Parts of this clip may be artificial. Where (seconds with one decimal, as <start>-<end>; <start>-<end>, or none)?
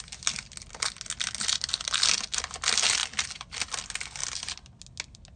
none